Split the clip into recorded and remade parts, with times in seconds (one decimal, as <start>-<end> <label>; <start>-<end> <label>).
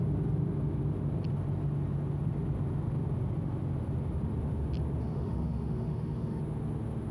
0.0-5.0 recorded; 5.0-6.4 remade; 6.4-7.1 recorded